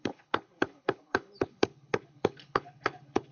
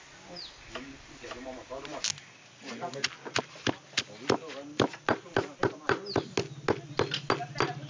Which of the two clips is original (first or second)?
second